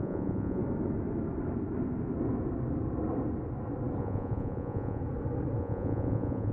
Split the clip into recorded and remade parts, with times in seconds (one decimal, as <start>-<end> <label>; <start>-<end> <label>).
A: 0.0-0.6 remade; 0.6-4.0 recorded; 4.0-5.0 remade; 5.0-5.6 recorded; 5.6-6.5 remade